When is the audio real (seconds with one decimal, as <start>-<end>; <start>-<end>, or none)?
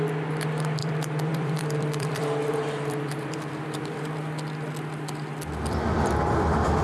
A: 0.0-0.8; 4.0-6.8